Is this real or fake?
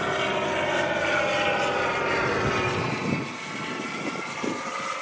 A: real